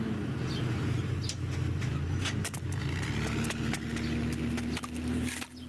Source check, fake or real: real